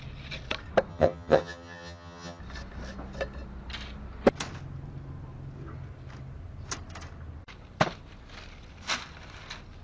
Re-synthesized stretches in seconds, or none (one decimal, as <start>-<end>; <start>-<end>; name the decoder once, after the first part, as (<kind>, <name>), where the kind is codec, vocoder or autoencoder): 0.9-2.4 (vocoder, HiFi-GAN)